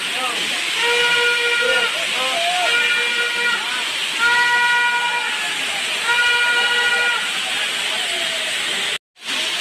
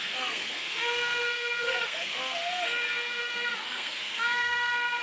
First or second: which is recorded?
first